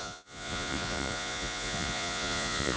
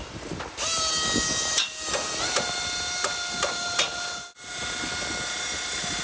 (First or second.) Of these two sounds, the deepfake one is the first